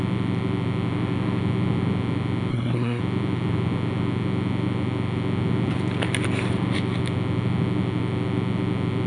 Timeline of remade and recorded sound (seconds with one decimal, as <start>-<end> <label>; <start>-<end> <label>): 0.0-2.5 recorded; 2.5-3.0 remade; 3.0-9.1 recorded